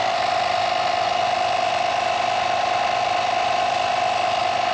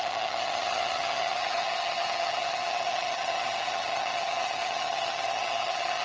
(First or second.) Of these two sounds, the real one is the first